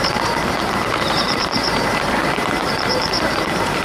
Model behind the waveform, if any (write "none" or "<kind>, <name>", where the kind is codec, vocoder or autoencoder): vocoder, BigVGAN v2